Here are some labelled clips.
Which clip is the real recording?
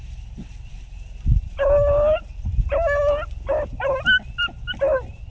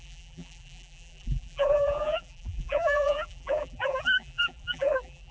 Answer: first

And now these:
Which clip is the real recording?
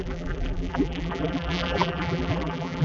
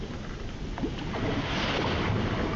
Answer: second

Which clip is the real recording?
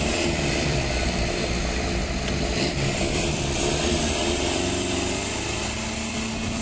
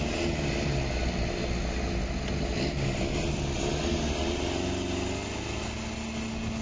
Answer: second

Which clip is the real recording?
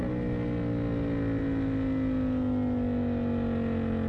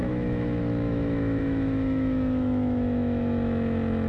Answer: first